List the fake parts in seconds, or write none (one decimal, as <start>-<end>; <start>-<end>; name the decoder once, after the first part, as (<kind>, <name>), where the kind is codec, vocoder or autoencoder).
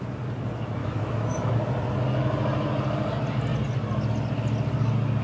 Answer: 0.8-1.5 (autoencoder, DAC-VAE)